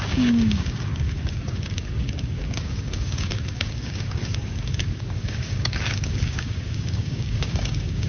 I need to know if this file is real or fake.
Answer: fake